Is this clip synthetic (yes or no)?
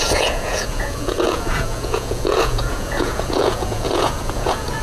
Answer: yes